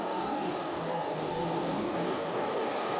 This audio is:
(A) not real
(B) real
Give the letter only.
A